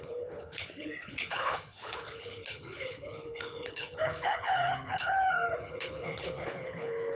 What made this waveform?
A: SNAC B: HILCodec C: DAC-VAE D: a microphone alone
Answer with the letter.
B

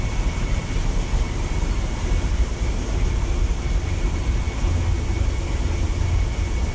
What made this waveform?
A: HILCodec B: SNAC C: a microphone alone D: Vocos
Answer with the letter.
C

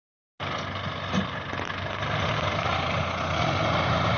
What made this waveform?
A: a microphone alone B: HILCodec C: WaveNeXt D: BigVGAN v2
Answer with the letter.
A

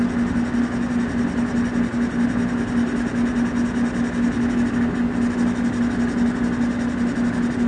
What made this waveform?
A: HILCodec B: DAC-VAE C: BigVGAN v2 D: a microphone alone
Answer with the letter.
D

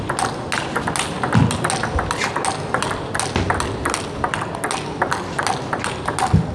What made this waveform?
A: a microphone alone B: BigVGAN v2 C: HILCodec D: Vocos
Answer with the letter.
A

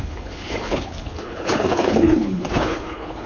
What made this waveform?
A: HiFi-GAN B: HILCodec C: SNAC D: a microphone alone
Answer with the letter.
B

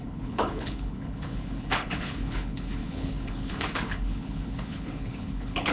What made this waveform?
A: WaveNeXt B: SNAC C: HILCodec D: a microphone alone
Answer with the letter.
C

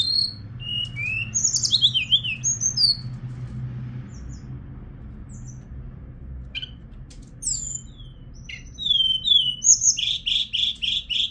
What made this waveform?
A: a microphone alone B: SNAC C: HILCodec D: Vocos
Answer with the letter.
A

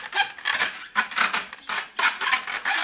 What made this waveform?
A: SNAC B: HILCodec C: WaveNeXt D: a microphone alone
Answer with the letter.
D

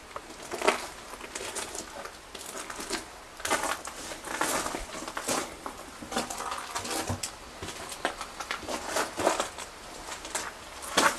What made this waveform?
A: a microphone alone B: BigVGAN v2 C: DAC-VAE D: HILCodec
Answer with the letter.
A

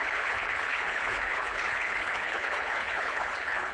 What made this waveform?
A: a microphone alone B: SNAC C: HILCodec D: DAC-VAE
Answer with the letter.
C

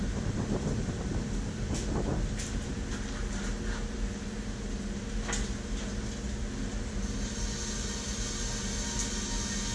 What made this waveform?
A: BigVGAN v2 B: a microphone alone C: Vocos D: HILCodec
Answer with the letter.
B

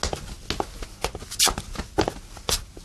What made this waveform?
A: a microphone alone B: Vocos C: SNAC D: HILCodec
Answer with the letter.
A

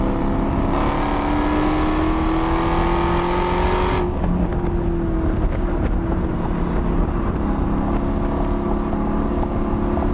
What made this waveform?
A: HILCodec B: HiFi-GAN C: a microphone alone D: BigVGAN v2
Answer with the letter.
C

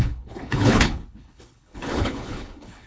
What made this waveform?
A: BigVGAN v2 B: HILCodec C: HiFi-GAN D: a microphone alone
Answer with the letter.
B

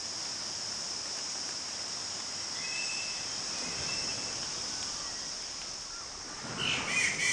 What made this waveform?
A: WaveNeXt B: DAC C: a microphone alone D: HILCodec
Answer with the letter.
C